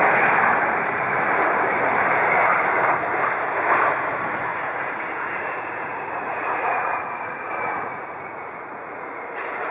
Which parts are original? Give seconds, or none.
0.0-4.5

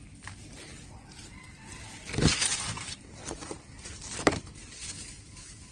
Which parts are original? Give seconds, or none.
0.0-4.8

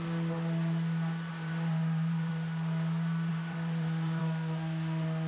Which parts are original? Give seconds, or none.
0.0-1.3; 2.3-3.3; 4.2-5.3

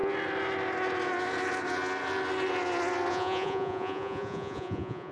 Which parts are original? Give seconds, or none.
0.0-3.1

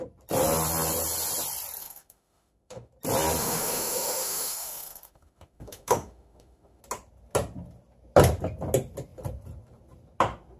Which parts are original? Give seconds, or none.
0.0-1.8; 2.9-3.4; 6.8-10.6

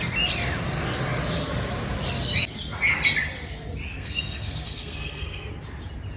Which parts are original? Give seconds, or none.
0.0-3.9; 5.5-6.2

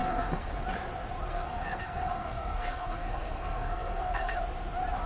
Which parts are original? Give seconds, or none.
0.5-1.3; 4.4-5.1

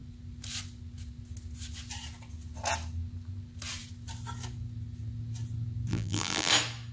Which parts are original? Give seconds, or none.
0.0-5.9; 6.5-6.9